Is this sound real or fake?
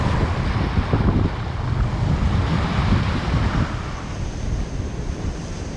real